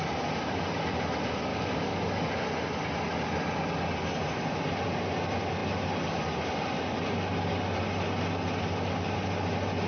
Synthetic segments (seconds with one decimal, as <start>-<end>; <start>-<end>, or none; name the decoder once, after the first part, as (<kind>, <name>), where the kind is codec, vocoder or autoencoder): 1.5-2.0 (codec, DAC)